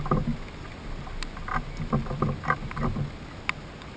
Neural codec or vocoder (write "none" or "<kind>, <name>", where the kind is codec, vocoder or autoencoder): none